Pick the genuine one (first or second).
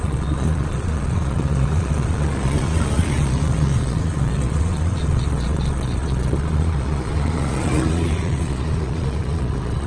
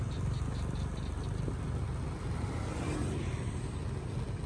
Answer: second